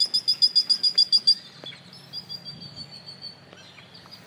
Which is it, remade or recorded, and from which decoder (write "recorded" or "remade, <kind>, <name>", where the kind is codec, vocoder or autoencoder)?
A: recorded